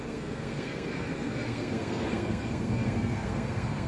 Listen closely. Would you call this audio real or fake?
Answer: fake